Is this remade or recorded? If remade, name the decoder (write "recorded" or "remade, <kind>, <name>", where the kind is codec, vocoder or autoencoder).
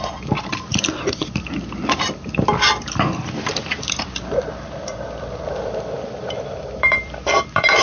remade, vocoder, BigVGAN v2